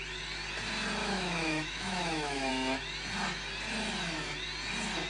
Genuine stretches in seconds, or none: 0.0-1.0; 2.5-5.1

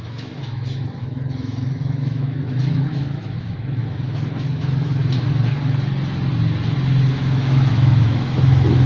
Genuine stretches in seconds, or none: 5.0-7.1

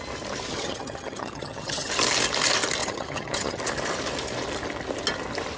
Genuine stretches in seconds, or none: 0.0-0.5; 1.9-2.8; 3.6-5.6

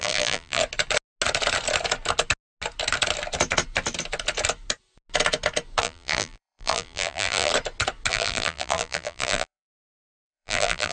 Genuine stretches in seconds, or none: 0.6-5.8; 7.5-8.1